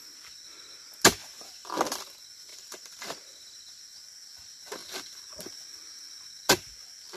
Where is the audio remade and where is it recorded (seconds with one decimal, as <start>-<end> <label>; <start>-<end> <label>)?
0.0-1.2 recorded; 1.2-1.7 remade; 1.7-2.5 recorded; 2.5-3.8 remade; 3.8-7.2 recorded